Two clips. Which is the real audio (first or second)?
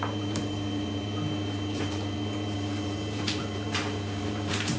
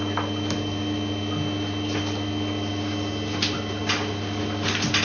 second